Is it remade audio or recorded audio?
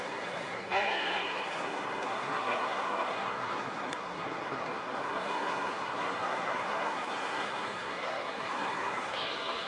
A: remade